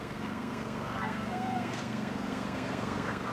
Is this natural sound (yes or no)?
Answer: no